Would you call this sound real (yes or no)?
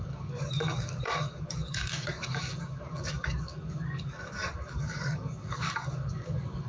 no